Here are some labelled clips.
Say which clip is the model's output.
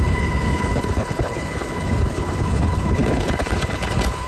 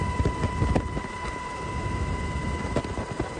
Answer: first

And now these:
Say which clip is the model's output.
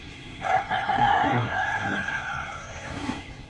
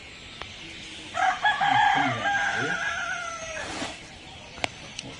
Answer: first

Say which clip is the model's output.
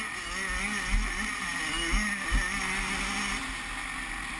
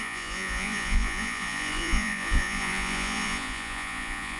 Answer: second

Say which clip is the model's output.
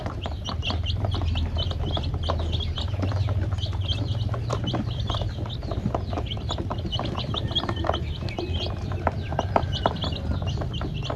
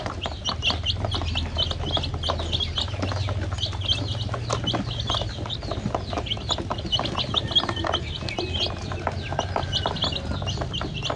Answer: first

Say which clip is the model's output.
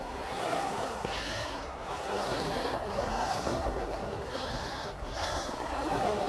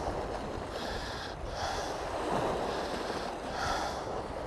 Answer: first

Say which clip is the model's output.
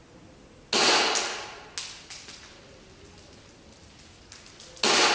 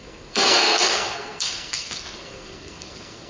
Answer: second